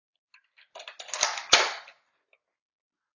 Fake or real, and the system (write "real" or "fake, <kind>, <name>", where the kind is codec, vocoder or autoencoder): real